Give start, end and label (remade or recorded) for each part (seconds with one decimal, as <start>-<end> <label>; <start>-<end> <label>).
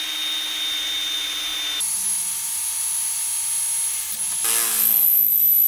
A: 0.0-5.7 recorded